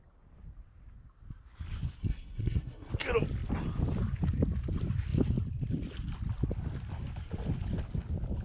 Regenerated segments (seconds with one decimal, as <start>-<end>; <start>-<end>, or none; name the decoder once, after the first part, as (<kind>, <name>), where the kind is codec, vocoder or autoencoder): 2.0-2.9 (codec, SNAC)